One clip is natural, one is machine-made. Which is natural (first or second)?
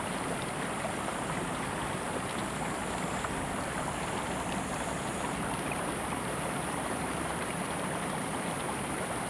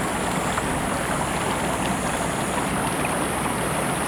second